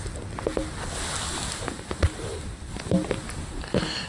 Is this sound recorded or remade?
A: recorded